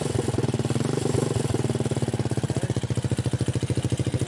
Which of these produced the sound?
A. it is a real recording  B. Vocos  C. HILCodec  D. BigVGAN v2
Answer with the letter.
A